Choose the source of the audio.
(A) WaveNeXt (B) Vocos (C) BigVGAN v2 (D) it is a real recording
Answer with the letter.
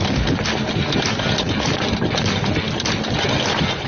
D